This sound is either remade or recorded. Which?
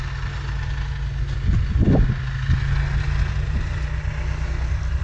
recorded